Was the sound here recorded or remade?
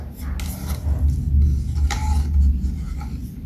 recorded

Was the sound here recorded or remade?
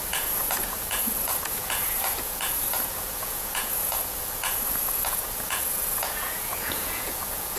remade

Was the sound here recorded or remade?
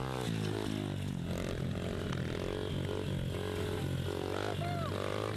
recorded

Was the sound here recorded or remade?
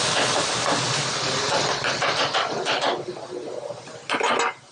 recorded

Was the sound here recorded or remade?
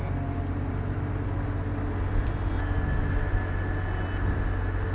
recorded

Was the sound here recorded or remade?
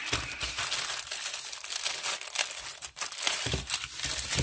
recorded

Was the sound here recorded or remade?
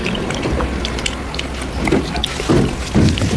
recorded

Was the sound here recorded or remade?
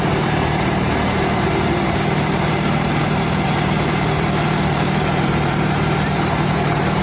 remade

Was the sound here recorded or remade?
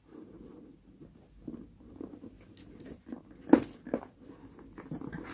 recorded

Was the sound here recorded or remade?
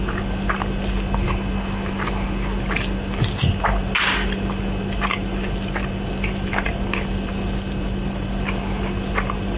recorded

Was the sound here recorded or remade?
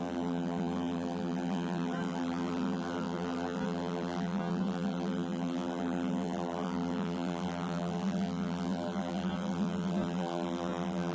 remade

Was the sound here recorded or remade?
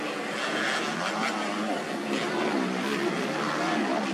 recorded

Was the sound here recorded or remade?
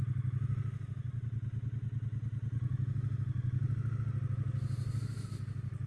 recorded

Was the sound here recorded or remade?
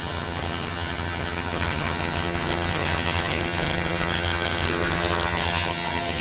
remade